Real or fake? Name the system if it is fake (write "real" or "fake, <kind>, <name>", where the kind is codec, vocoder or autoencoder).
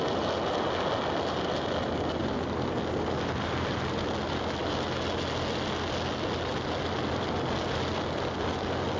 real